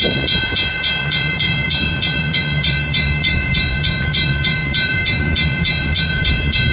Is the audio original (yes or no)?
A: no